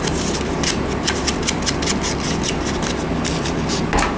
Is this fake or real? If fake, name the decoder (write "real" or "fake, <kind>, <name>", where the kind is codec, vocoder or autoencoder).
real